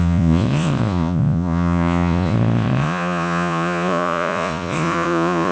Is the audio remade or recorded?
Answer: remade